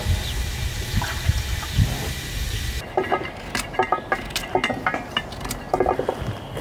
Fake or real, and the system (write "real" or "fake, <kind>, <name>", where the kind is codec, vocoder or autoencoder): real